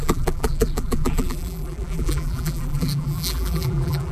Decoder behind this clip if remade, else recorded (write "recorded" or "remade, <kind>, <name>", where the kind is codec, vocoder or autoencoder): remade, vocoder, BigVGAN v2